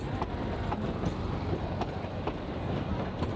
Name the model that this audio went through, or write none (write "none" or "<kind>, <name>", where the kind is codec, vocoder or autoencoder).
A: vocoder, BigVGAN v2